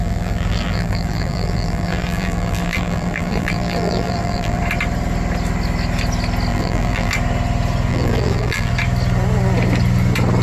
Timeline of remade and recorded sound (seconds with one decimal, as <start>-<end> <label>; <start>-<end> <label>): 0.0-4.6 remade; 4.6-6.5 recorded; 6.5-7.1 remade; 7.1-7.9 recorded; 7.9-8.7 remade; 8.7-10.4 recorded